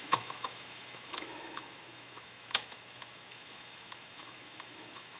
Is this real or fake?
fake